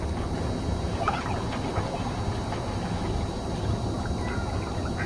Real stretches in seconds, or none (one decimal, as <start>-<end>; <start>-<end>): 0.0-5.1